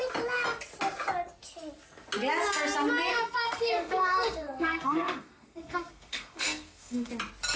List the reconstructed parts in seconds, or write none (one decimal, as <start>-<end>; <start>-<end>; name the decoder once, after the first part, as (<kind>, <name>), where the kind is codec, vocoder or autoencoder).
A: 3.1-7.1 (codec, SNAC)

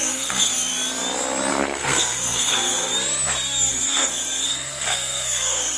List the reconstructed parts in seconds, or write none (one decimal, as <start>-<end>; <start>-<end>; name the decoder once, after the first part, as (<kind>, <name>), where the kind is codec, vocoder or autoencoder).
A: 0.0-0.5 (codec, SNAC); 1.5-2.9; 3.7-5.8

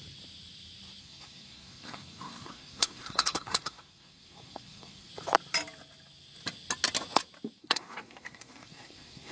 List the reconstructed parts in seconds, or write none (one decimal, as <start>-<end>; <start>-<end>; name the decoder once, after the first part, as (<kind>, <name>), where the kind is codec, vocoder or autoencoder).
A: 1.0-5.1 (codec, SNAC); 7.6-9.3

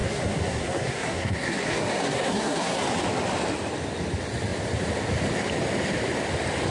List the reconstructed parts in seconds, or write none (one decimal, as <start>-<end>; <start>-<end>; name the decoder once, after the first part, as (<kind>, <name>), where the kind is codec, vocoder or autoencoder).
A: 0.0-2.8 (codec, SNAC)

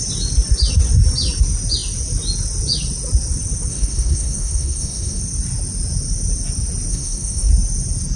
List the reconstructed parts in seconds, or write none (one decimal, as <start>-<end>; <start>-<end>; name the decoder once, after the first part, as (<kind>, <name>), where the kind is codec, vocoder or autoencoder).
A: 3.7-5.2 (codec, SNAC); 6.9-7.5

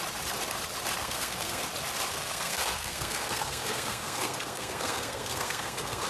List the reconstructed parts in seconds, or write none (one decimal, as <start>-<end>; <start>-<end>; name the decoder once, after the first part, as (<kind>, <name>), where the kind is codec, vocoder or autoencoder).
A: 1.0-1.6 (codec, SNAC); 2.1-6.1

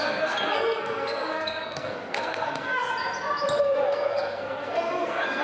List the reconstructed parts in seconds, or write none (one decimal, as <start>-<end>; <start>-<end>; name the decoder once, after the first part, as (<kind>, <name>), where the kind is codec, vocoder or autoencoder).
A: 0.0-2.9 (codec, SNAC); 3.6-5.4

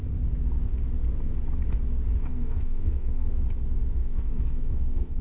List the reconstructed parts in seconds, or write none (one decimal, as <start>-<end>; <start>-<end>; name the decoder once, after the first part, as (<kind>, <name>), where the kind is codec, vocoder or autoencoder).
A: 2.3-3.4 (codec, SNAC); 4.0-5.2